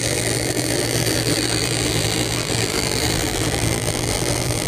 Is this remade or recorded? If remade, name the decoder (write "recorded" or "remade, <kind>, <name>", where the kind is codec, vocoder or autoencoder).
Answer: remade, vocoder, BigVGAN v2